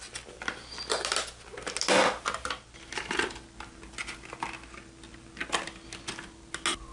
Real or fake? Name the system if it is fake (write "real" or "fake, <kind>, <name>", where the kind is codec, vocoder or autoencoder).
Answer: real